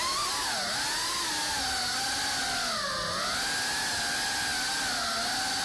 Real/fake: real